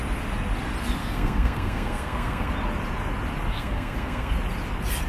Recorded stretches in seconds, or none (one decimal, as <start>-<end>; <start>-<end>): 0.0-1.0; 2.5-3.5; 4.3-5.1